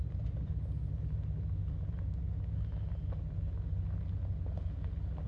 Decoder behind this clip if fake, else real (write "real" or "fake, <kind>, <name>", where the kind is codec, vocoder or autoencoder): real